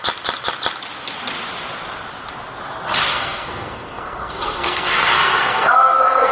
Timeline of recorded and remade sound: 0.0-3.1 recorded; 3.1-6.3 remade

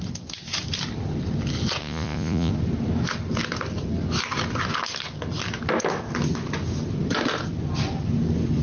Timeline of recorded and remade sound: 0.0-1.8 recorded; 1.8-2.5 remade; 2.5-8.6 recorded

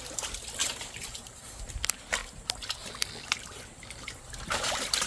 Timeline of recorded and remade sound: 0.0-0.6 recorded; 0.6-1.7 remade; 1.7-5.1 recorded

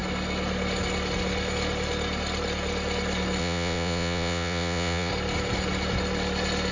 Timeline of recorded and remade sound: 0.0-3.4 recorded; 3.4-5.1 remade; 5.1-6.7 recorded

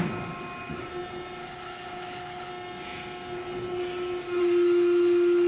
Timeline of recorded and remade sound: 0.0-1.4 recorded; 1.4-2.5 remade; 2.5-5.5 recorded

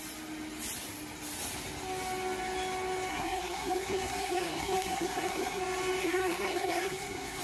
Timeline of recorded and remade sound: 0.0-3.1 recorded; 3.1-5.6 remade; 5.6-6.0 recorded; 6.0-7.4 remade

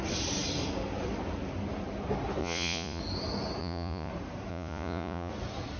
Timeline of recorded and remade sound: 0.0-2.4 recorded; 2.4-3.0 remade; 3.0-3.6 recorded; 3.6-4.1 remade; 4.1-4.5 recorded; 4.5-5.3 remade; 5.3-5.8 recorded

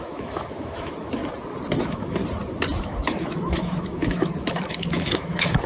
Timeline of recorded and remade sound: 0.0-1.2 remade; 1.2-1.8 recorded; 1.8-2.2 remade; 2.2-2.8 recorded; 2.8-5.7 remade